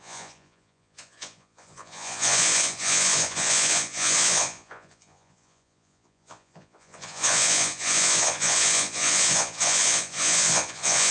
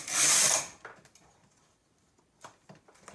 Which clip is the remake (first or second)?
first